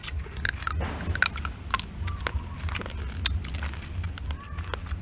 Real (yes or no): yes